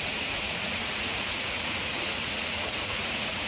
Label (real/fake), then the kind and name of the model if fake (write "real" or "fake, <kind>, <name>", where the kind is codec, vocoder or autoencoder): fake, vocoder, Vocos